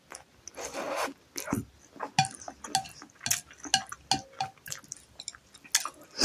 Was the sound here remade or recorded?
recorded